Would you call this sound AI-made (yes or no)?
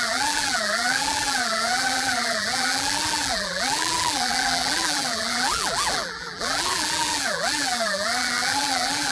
yes